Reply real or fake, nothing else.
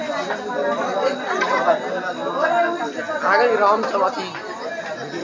real